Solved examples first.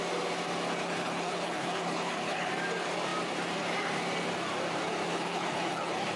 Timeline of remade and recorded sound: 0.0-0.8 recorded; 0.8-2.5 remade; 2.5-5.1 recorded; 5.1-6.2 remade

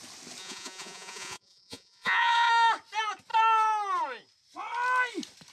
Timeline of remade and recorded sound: 0.0-0.4 recorded; 0.4-2.5 remade; 2.5-5.5 recorded

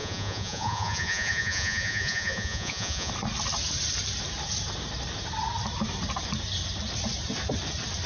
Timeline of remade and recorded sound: 0.0-3.1 remade; 3.1-8.1 recorded

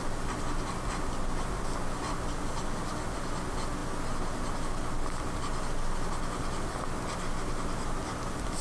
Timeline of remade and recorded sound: 0.0-8.6 recorded

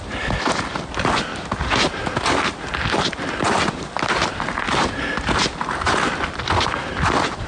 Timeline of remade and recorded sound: 0.0-7.5 recorded

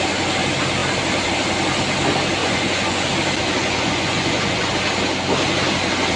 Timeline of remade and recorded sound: 0.0-2.4 recorded; 2.4-3.1 remade; 3.1-3.6 recorded; 3.6-4.7 remade; 4.7-6.2 recorded

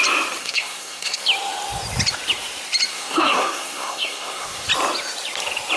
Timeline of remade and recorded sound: 0.0-0.4 recorded; 0.4-1.2 remade; 1.2-2.9 recorded; 2.9-4.7 remade; 4.7-5.8 recorded